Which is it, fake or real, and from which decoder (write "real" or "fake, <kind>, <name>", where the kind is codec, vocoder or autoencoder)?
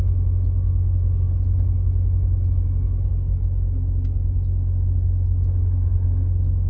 real